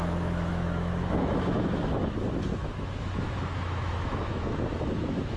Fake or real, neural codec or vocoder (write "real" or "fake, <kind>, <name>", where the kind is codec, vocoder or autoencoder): fake, autoencoder, DAC-VAE